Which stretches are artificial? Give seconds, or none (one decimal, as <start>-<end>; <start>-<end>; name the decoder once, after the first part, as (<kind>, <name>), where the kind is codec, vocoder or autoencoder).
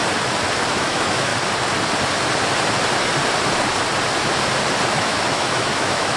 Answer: 0.7-1.3 (autoencoder, DAC-VAE); 4.9-6.2